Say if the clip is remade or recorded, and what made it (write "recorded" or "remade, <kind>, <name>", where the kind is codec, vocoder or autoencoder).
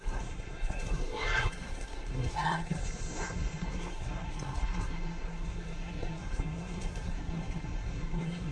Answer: remade, codec, SNAC